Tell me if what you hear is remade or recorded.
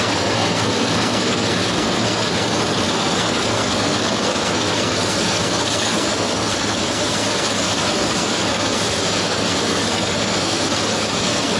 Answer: remade